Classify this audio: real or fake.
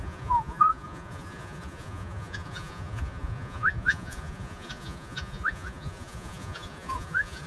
fake